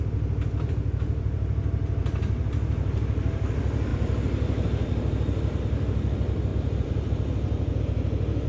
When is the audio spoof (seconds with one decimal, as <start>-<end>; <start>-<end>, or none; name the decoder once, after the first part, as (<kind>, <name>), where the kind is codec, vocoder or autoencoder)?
none